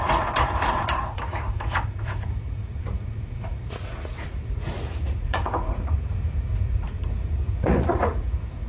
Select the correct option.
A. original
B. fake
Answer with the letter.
B